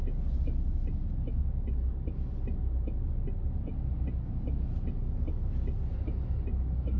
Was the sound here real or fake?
real